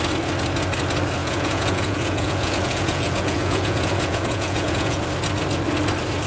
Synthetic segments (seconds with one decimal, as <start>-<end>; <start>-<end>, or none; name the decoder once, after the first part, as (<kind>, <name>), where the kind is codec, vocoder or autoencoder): 1.2-5.0 (vocoder, Vocos)